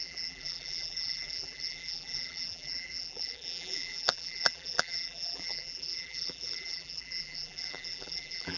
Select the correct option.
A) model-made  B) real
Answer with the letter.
A